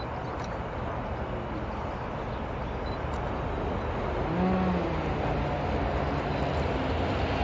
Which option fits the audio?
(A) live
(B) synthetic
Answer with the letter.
A